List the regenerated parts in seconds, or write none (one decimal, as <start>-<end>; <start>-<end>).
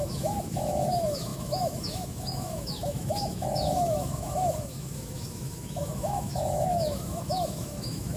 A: 0.0-8.2